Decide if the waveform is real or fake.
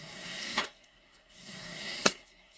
fake